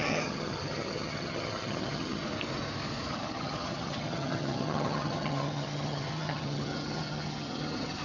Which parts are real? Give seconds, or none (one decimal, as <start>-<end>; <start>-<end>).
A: 2.2-3.1